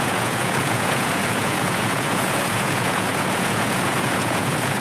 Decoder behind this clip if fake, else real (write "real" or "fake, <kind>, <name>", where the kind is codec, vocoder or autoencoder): fake, vocoder, Vocos